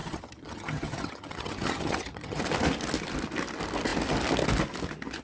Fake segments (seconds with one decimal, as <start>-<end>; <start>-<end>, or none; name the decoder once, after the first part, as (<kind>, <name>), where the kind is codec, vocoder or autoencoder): 0.0-2.4 (vocoder, HiFi-GAN)